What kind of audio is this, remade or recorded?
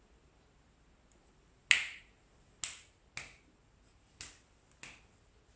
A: recorded